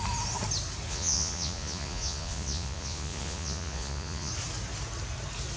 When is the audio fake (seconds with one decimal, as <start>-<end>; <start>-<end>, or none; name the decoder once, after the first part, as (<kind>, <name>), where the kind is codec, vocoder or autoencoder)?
0.9-4.3 (vocoder, Vocos)